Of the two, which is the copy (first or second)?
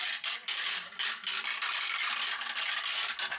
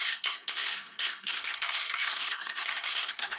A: second